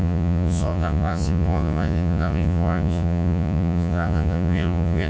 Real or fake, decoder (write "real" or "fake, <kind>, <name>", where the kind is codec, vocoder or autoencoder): fake, vocoder, Vocos